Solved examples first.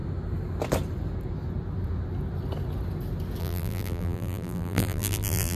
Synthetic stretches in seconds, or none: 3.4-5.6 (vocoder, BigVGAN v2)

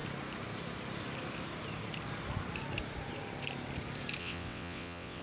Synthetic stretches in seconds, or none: 4.2-5.2 (vocoder, WaveNeXt)

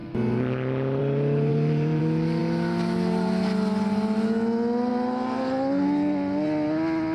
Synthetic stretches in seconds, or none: 1.5-2.0 (vocoder, BigVGAN v2)

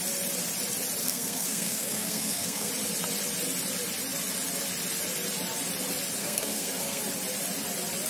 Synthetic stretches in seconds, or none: 1.0-2.7 (codec, SNAC); 6.2-7.0

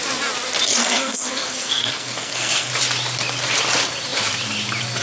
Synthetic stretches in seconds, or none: 0.8-2.7 (codec, SNAC)

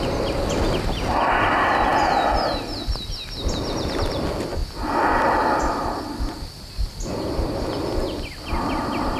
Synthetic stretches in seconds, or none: none

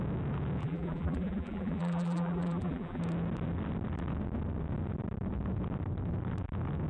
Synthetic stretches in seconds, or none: 0.6-3.0 (vocoder, BigVGAN v2)

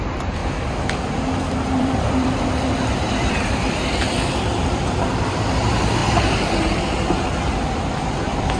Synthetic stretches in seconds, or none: 0.0-0.4 (vocoder, BigVGAN v2); 1.6-6.0; 7.9-8.6